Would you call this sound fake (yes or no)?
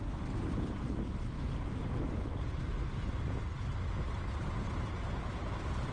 no